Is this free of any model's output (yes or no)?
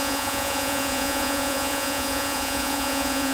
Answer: no